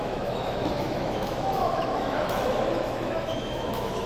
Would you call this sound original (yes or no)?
no